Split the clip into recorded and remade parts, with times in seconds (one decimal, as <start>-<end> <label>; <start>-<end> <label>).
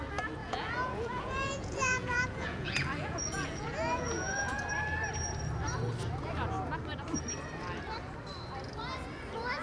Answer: 0.0-0.4 recorded; 0.4-4.6 remade; 4.6-9.6 recorded